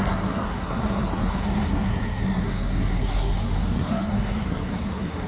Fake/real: fake